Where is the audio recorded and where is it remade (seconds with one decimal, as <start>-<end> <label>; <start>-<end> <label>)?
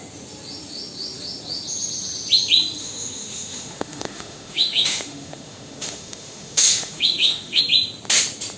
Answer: 0.0-2.8 recorded; 2.8-7.6 remade; 7.6-8.6 recorded